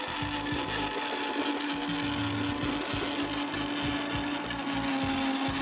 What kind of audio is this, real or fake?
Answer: real